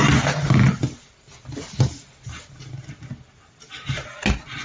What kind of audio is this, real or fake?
real